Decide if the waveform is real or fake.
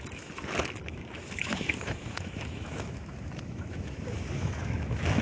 fake